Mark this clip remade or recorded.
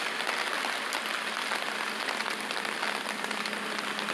recorded